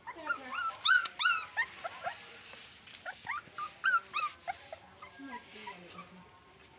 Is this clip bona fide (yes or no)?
yes